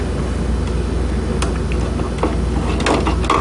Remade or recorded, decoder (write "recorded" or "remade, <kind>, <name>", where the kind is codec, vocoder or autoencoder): recorded